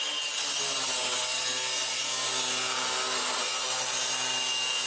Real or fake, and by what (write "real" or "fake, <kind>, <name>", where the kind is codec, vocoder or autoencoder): real